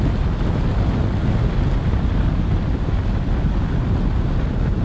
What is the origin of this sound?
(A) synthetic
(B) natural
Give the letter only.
B